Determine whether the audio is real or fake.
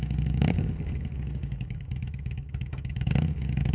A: fake